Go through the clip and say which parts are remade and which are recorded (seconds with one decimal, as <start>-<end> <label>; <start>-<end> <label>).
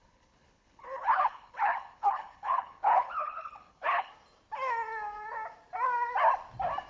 0.0-4.1 remade; 4.1-6.9 recorded